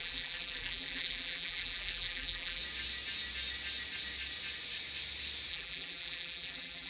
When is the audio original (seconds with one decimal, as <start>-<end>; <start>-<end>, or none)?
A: 2.6-5.5